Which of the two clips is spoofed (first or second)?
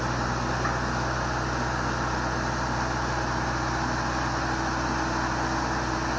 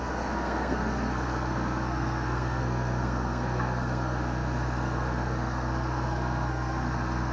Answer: second